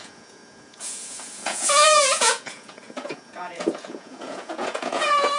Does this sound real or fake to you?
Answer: fake